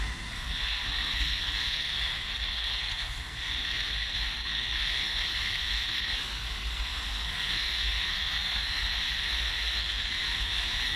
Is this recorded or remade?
remade